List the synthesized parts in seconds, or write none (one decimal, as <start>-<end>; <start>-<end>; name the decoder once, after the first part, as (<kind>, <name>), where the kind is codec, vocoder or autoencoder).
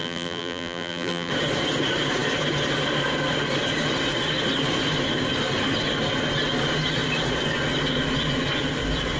0.0-1.3 (vocoder, BigVGAN v2)